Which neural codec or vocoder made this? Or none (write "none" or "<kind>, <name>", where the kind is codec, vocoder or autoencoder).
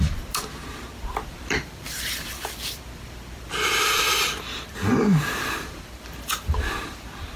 vocoder, BigVGAN v2